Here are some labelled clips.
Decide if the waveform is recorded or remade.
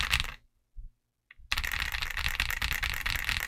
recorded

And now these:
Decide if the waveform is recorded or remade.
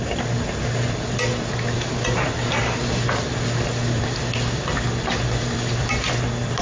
recorded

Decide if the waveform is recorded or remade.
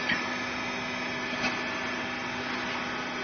recorded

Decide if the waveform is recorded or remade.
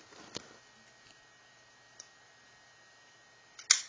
recorded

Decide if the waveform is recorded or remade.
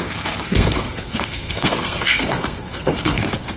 remade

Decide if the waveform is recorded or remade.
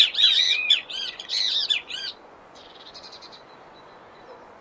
remade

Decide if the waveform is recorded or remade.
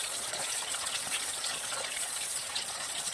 remade